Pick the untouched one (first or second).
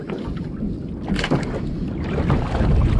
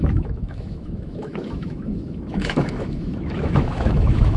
first